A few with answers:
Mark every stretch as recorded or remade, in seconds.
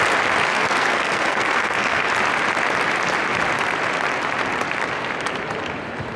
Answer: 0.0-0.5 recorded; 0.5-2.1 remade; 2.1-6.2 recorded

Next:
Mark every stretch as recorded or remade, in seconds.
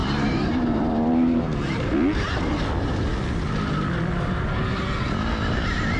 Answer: 0.0-1.4 remade; 1.4-6.0 recorded